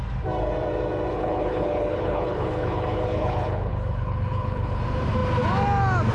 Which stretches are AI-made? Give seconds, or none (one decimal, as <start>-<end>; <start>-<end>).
1.1-4.8